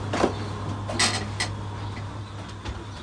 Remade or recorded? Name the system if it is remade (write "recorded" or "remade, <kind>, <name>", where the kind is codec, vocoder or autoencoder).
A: recorded